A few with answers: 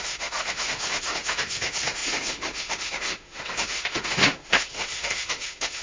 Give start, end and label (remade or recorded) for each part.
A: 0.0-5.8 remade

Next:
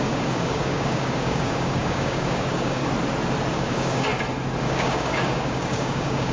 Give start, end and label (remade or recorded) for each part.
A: 0.0-2.8 remade; 2.8-3.5 recorded; 3.5-4.1 remade; 4.1-4.6 recorded; 4.6-6.3 remade

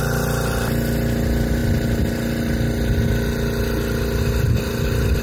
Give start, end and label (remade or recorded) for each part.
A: 0.0-5.2 recorded

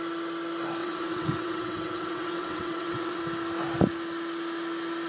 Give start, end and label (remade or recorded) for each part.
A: 0.0-0.8 recorded; 0.8-3.2 remade; 3.2-5.1 recorded